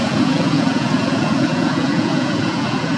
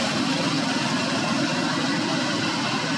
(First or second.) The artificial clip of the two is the first